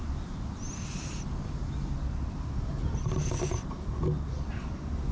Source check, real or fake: real